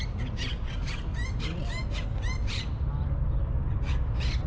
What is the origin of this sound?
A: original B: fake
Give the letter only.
A